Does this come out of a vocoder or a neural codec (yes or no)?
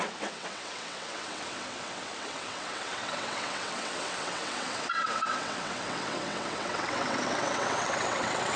yes